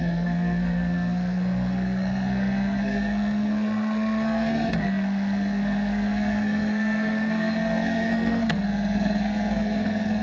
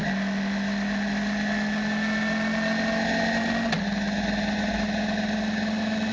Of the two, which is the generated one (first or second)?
first